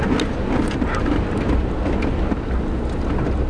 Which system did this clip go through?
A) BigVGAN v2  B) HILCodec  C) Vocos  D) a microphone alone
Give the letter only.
D